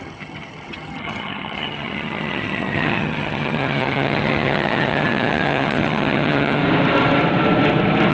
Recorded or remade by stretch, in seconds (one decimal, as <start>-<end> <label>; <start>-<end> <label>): 0.0-6.6 remade; 6.6-8.1 recorded